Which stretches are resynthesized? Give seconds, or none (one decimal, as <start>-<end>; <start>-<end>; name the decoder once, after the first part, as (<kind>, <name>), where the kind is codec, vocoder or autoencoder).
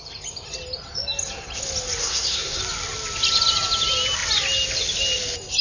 2.0-2.6 (codec, SNAC)